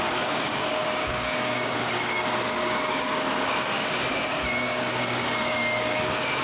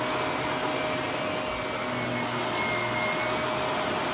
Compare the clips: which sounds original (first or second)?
second